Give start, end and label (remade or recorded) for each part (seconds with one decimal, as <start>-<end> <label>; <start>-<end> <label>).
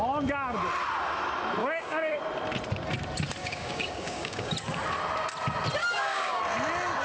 0.0-1.6 recorded; 1.6-2.2 remade; 2.2-3.4 recorded; 3.4-4.5 remade; 4.5-5.8 recorded; 5.8-6.4 remade; 6.4-7.0 recorded